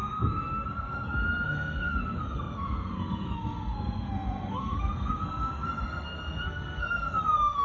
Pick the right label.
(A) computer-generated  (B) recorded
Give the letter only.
A